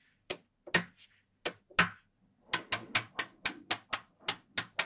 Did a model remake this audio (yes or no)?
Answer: no